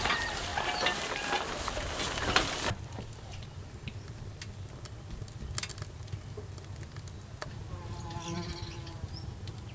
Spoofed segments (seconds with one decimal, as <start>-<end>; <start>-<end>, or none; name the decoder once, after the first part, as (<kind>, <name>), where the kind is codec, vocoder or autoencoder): none